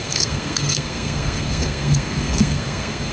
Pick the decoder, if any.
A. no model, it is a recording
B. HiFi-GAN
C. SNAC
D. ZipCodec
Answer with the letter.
C